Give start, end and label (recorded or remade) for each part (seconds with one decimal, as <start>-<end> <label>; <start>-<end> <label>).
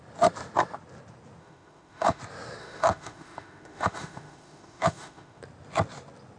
0.0-1.4 recorded; 1.4-2.2 remade; 2.2-2.6 recorded; 2.6-5.4 remade; 5.4-6.4 recorded